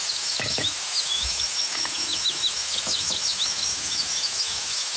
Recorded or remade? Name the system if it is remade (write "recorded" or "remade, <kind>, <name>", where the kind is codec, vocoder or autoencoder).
remade, autoencoder, DAC-VAE